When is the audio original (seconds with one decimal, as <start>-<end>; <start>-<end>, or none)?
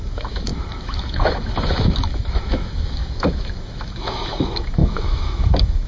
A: none